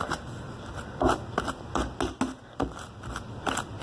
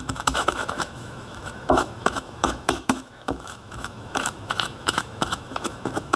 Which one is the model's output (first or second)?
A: second